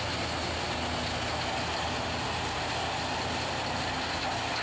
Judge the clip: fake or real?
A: real